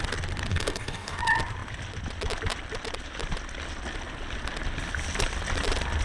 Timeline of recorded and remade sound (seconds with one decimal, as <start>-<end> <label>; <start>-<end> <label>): 0.0-0.5 recorded; 0.5-1.2 remade; 1.2-6.0 recorded